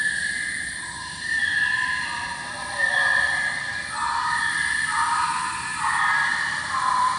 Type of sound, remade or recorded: remade